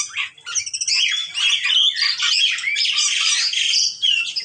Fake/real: real